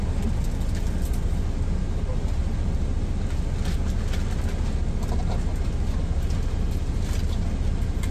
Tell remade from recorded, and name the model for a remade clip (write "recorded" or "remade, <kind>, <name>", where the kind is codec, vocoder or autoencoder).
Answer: recorded